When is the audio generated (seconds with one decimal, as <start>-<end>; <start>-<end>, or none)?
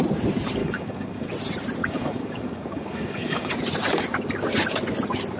0.6-1.3; 1.8-3.5